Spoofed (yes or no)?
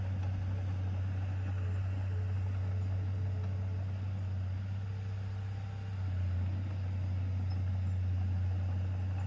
no